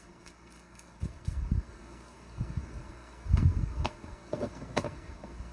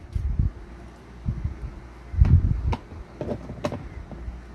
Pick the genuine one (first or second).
second